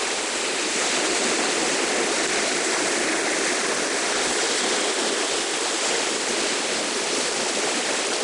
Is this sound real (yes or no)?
yes